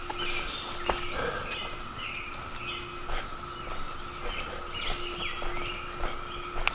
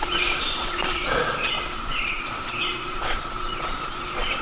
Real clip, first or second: first